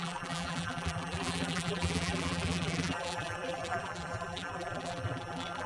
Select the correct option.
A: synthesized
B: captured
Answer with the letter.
A